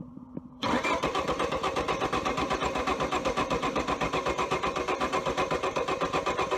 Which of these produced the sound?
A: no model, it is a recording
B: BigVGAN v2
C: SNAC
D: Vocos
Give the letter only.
B